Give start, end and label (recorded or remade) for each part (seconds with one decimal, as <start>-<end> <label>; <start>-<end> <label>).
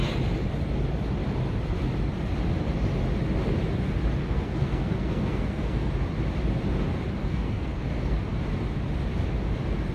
0.0-4.2 recorded; 4.2-5.9 remade; 5.9-7.2 recorded; 7.2-8.2 remade; 8.2-9.9 recorded